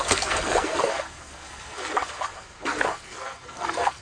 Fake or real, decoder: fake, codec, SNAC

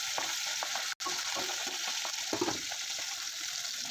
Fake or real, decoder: real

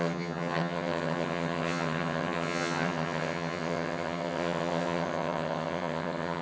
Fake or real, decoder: fake, vocoder, HiFi-GAN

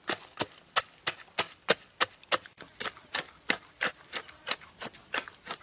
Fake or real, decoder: real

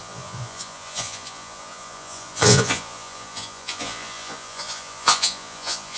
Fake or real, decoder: fake, vocoder, Vocos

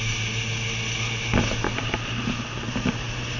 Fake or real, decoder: real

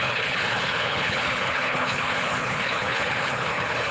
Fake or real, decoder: fake, codec, HILCodec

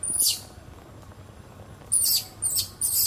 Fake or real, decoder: real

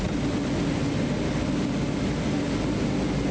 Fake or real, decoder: real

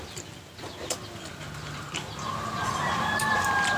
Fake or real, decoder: real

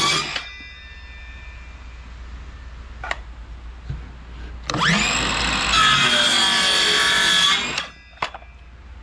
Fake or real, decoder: real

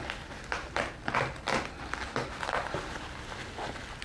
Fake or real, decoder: real